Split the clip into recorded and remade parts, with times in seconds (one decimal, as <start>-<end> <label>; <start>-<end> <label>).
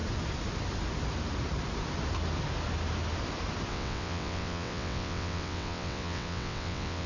0.0-3.7 recorded; 3.7-7.1 remade